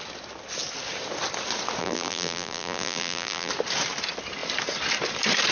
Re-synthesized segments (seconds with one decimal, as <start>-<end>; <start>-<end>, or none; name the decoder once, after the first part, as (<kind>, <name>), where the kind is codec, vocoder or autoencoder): 1.8-3.5 (vocoder, BigVGAN v2)